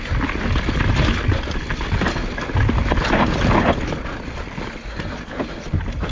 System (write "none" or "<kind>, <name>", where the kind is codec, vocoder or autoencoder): none